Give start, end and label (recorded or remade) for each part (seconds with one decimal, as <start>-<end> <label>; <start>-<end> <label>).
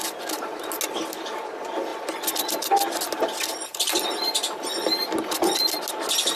0.0-6.4 recorded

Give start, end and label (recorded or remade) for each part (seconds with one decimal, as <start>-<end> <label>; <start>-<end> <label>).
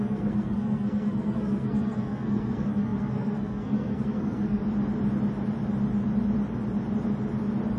0.0-4.6 remade; 4.6-7.8 recorded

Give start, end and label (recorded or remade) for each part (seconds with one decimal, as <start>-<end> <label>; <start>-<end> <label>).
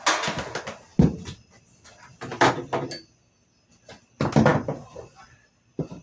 0.0-6.0 recorded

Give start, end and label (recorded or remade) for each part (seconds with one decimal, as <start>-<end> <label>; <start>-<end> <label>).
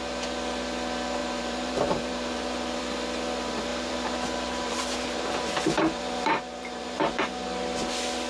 0.0-1.2 recorded; 1.2-2.8 remade; 2.8-3.7 recorded; 3.7-7.2 remade; 7.2-8.3 recorded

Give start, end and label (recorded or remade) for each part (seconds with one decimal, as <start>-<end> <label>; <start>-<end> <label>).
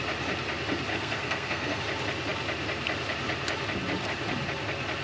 0.0-0.9 recorded; 0.9-1.8 remade; 1.8-5.0 recorded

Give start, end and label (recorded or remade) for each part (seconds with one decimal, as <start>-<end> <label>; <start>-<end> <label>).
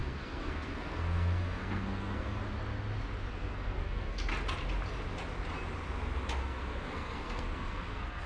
0.0-2.4 remade; 2.4-3.3 recorded; 3.3-4.3 remade; 4.3-6.4 recorded; 6.4-8.3 remade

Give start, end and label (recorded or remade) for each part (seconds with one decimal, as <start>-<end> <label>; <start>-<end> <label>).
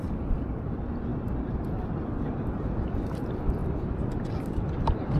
0.0-3.6 recorded; 3.6-4.3 remade; 4.3-5.2 recorded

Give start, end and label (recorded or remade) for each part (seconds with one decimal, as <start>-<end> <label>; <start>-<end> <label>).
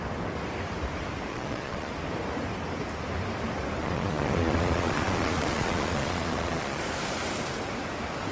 0.0-1.3 recorded; 1.3-1.9 remade; 1.9-3.8 recorded; 3.8-6.8 remade; 6.8-8.3 recorded